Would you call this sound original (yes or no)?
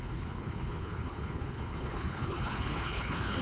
no